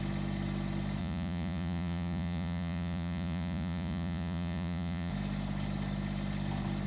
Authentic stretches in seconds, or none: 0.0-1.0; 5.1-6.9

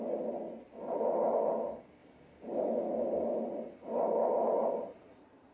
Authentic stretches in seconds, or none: 0.0-4.4

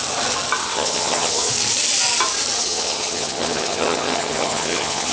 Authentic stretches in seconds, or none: 0.0-0.6; 1.5-2.6

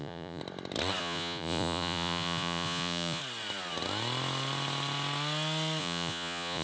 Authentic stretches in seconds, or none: 0.4-1.0; 3.2-5.8